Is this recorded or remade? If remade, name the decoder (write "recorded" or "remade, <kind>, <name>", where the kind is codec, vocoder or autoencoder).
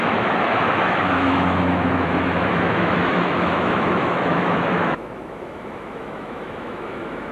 remade, autoencoder, DAC-VAE